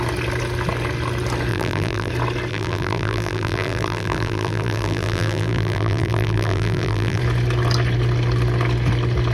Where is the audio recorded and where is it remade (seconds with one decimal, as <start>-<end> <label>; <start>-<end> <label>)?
0.0-1.5 recorded; 1.5-2.1 remade; 2.1-2.5 recorded; 2.5-7.2 remade; 7.2-9.3 recorded